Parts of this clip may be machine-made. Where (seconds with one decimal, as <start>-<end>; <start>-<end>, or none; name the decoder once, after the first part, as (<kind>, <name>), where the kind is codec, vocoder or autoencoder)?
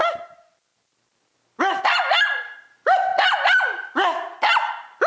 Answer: none